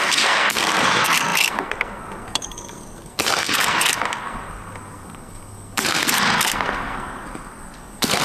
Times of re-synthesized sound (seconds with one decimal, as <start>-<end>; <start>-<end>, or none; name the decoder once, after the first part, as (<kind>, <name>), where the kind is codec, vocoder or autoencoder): 0.0-8.2 (codec, SNAC)